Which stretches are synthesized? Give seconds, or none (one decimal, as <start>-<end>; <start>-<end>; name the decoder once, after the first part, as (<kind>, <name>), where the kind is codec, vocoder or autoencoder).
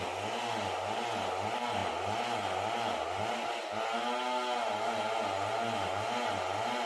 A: none